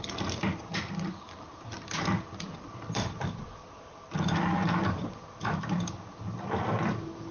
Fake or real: real